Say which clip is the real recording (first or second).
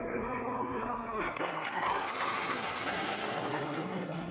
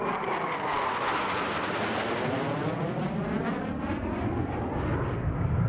second